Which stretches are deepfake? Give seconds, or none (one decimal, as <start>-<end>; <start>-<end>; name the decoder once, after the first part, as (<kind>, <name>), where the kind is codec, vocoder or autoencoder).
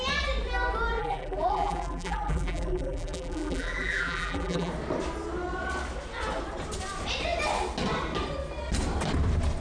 1.0-4.7 (vocoder, BigVGAN v2)